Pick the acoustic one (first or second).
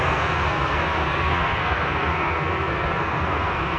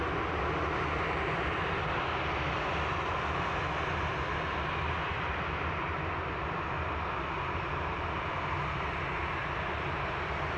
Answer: second